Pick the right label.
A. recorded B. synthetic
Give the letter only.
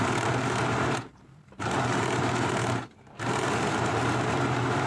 B